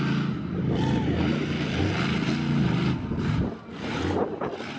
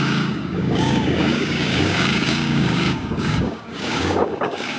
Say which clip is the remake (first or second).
second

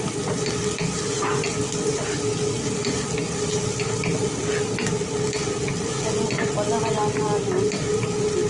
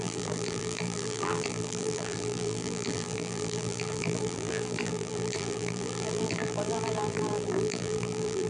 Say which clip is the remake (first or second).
second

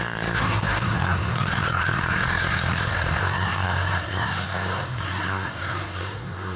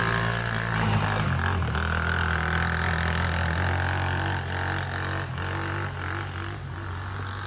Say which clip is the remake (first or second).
first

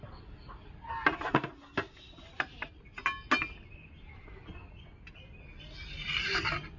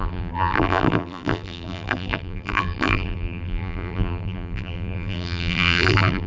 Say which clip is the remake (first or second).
second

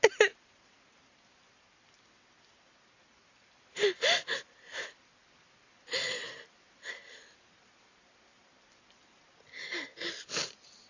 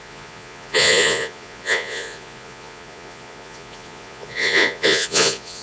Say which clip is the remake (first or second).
second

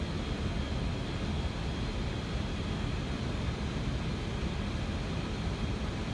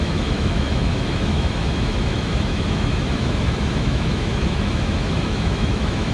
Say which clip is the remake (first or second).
second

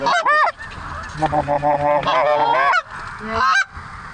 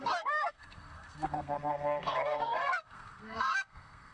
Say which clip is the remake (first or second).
second